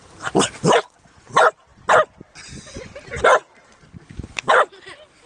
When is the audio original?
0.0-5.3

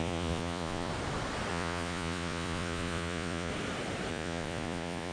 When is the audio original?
0.9-1.5; 3.5-4.1

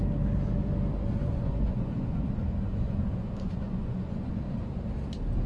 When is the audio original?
0.0-1.0; 4.3-5.5